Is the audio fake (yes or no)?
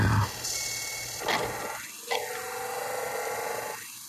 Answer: no